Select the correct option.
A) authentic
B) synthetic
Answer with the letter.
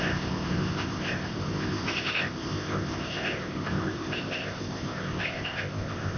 B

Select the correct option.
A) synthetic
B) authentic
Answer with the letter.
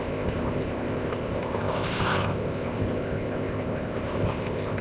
A